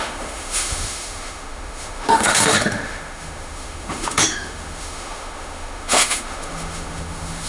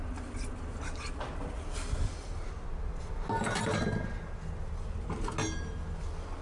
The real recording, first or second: second